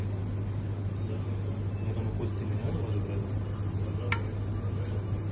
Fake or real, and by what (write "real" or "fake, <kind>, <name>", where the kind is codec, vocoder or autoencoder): real